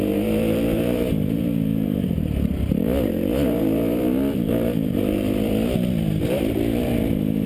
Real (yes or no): no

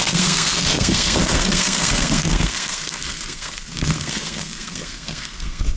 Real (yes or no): no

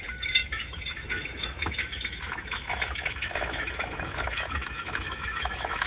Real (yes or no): no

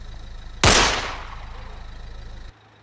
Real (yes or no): yes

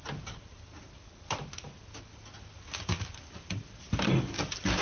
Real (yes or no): yes